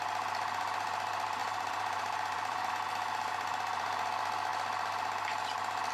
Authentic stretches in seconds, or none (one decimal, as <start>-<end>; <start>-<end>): 0.0-1.4; 2.7-5.9